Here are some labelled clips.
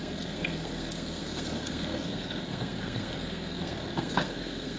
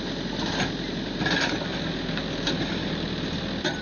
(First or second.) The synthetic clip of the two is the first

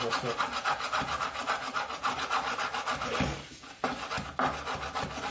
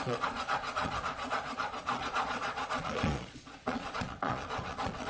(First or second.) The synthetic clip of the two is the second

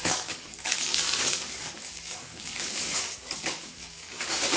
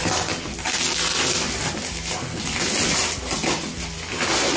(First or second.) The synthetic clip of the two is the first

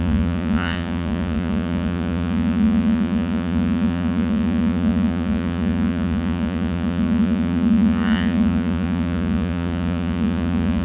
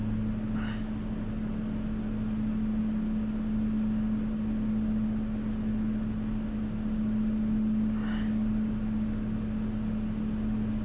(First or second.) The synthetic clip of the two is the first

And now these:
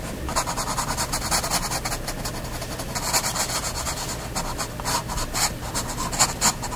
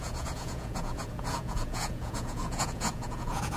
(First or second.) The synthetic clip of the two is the second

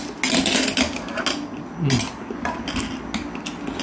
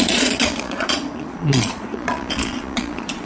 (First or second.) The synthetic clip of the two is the second